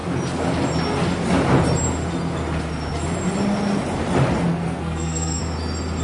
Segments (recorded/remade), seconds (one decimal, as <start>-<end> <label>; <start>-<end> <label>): 0.0-4.5 recorded; 4.5-5.4 remade; 5.4-6.0 recorded